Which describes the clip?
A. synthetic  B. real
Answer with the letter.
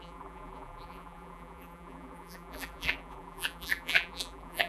A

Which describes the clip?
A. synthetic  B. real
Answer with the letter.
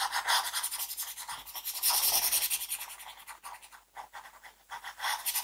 B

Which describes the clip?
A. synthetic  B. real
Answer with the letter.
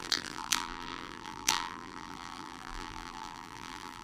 A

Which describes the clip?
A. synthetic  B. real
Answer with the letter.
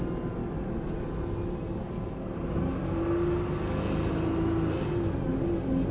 B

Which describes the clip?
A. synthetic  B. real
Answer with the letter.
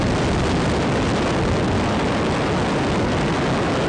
B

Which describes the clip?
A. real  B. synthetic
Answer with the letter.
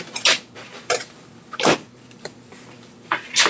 B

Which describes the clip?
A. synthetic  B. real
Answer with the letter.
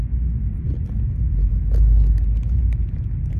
B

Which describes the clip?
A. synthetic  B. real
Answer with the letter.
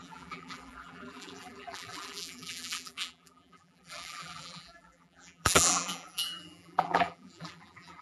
A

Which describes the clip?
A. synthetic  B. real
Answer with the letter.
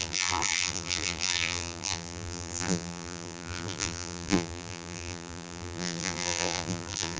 A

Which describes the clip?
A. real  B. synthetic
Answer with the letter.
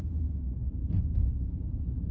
A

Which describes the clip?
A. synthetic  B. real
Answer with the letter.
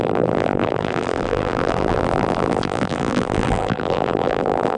A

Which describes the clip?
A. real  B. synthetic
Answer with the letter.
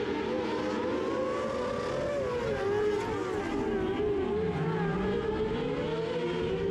A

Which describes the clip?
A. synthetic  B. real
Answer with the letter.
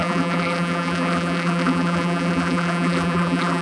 A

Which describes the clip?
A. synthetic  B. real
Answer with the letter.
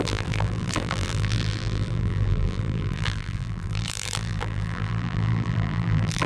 A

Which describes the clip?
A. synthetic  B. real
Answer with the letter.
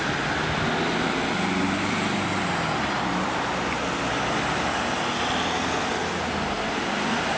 B